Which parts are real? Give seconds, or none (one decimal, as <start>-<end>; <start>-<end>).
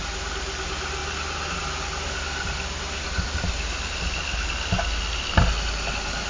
0.0-6.3